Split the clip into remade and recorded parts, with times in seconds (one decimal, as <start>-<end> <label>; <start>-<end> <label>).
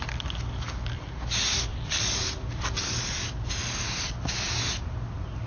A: 0.0-1.7 recorded; 1.7-3.5 remade; 3.5-5.5 recorded